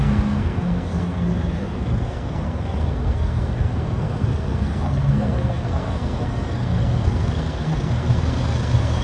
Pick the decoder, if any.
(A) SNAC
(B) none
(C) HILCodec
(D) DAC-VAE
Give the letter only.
A